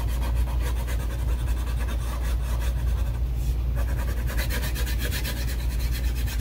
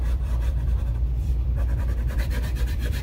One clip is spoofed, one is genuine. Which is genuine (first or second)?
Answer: first